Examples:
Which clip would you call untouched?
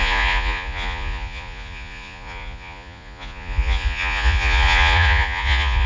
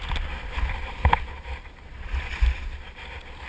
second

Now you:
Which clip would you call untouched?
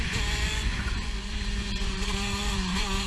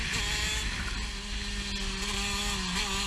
second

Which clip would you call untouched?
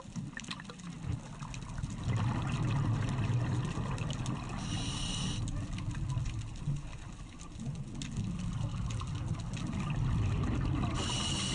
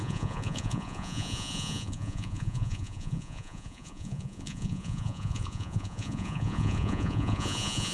first